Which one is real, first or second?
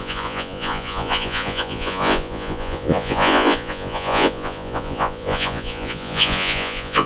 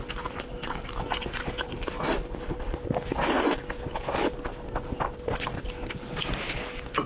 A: second